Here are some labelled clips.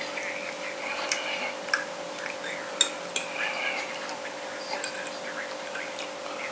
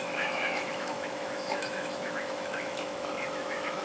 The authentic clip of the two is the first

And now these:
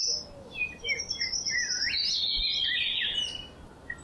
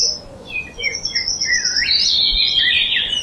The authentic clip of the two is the first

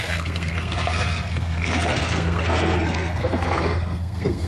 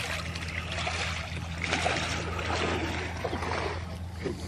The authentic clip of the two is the second